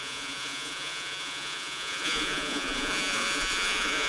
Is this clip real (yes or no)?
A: no